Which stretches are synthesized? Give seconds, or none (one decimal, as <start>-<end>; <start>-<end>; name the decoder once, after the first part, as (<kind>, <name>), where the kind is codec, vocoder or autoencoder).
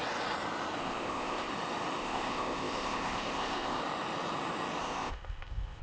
0.8-1.5 (codec, ZipCodec); 2.0-3.8; 4.8-5.8